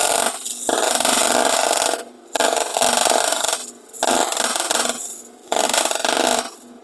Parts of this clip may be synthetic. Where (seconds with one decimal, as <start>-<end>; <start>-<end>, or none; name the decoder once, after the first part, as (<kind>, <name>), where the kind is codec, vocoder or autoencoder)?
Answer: none